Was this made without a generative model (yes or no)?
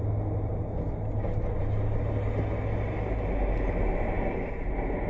yes